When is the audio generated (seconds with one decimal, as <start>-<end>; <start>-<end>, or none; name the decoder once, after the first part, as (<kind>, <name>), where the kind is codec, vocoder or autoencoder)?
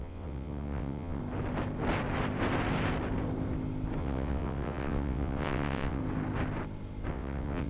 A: 0.0-1.2 (vocoder, WaveNeXt); 4.0-6.0; 7.1-7.7